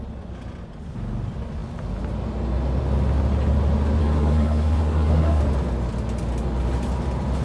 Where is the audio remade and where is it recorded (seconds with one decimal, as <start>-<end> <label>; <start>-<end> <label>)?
0.0-4.0 recorded; 4.0-5.4 remade; 5.4-7.4 recorded